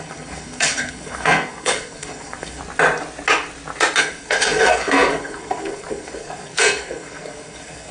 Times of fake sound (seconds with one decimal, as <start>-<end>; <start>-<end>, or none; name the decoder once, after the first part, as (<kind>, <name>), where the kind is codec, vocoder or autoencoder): 0.0-2.6 (codec, SNAC); 4.0-7.9